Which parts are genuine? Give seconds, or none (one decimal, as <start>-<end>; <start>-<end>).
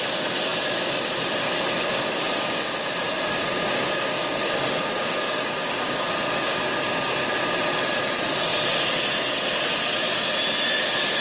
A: 0.0-1.9; 6.1-11.2